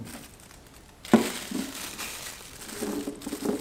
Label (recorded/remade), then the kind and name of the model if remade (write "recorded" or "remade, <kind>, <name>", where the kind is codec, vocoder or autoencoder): recorded